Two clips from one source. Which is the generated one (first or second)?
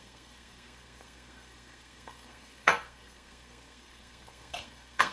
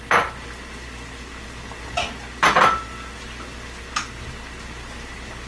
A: first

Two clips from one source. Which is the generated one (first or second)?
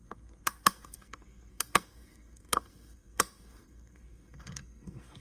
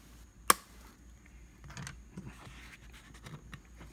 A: first